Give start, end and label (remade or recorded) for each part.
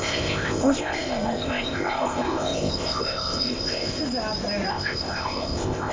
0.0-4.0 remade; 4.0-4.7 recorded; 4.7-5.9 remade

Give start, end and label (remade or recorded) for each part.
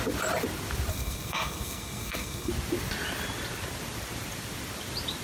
0.0-0.9 recorded; 0.9-2.5 remade; 2.5-5.2 recorded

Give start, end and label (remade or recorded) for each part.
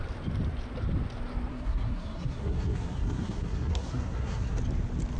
0.0-1.5 recorded; 1.5-4.6 remade; 4.6-5.2 recorded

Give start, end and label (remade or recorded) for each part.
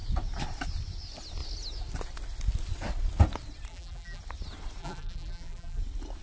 0.0-3.7 recorded; 3.7-4.2 remade; 4.2-4.8 recorded; 4.8-5.8 remade; 5.8-6.2 recorded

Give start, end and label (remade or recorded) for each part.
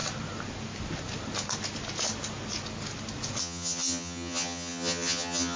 0.0-3.4 recorded; 3.4-5.6 remade